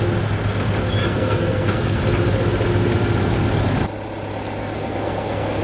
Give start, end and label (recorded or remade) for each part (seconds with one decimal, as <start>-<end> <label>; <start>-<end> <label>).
0.0-1.0 recorded; 1.0-2.0 remade; 2.0-4.6 recorded; 4.6-5.6 remade